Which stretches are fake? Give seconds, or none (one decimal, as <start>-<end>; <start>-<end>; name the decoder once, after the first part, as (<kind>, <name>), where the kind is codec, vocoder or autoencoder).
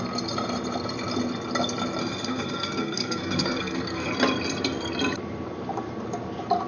2.0-4.1 (codec, SNAC)